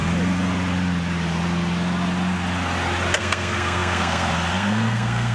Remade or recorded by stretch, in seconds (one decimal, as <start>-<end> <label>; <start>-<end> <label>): 0.0-3.2 recorded; 3.2-5.3 remade